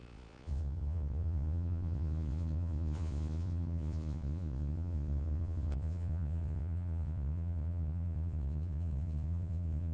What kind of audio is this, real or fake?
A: fake